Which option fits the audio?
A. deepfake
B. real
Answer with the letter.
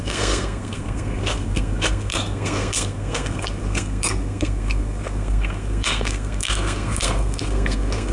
A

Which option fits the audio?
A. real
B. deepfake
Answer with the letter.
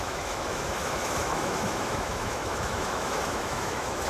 B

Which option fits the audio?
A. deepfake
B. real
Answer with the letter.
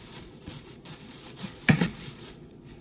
A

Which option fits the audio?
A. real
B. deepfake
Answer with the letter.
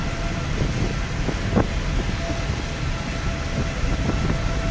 A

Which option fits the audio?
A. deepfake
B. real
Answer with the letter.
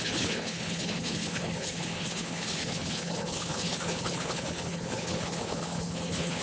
A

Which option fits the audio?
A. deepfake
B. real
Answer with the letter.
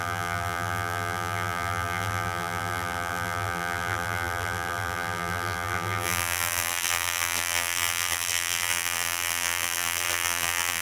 A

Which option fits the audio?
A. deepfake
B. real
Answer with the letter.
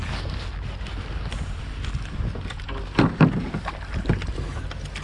B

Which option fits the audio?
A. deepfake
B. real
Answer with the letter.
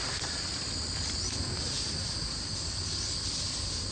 B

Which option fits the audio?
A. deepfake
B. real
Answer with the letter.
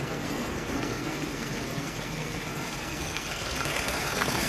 A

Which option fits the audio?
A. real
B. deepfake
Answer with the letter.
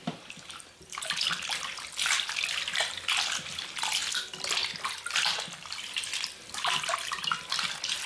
A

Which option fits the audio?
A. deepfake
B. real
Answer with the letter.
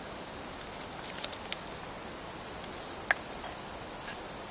B